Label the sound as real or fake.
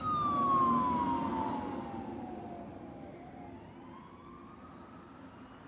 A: real